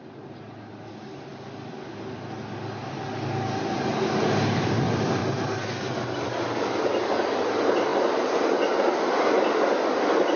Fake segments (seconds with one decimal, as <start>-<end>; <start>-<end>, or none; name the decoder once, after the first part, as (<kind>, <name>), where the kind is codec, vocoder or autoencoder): 0.0-1.3 (vocoder, BigVGAN v2); 4.2-5.2; 6.4-10.4